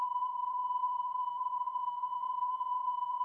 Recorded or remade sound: remade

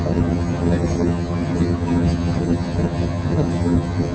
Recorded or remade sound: remade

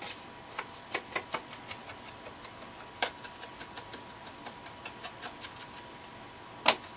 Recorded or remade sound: recorded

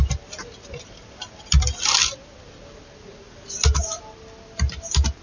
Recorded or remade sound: recorded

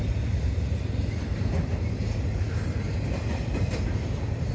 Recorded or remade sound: recorded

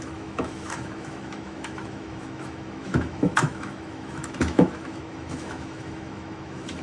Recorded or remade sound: remade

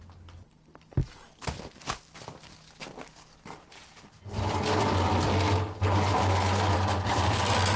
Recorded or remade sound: recorded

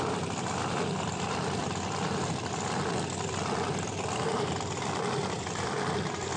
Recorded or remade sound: remade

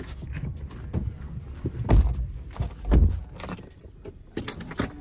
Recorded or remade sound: recorded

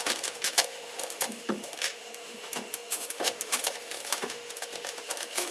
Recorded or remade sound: remade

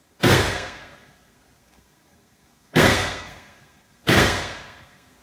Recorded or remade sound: remade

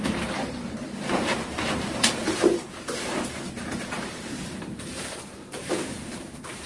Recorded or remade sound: remade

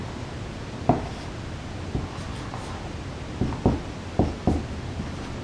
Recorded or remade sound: recorded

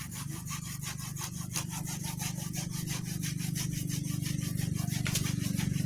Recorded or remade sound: recorded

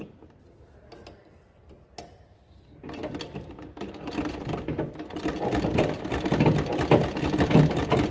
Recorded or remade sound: recorded